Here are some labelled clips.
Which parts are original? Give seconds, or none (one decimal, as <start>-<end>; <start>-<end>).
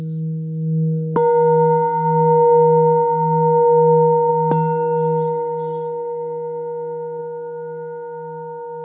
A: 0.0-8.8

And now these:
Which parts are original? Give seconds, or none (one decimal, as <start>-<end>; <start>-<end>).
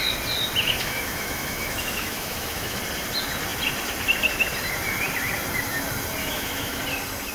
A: 0.0-0.6; 2.8-6.2; 6.8-7.3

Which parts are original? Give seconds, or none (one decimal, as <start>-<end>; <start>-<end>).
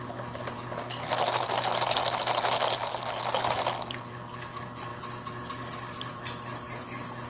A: 0.0-7.3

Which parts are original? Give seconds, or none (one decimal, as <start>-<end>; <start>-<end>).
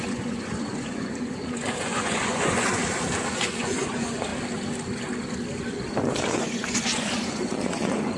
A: 2.8-3.3; 4.3-6.1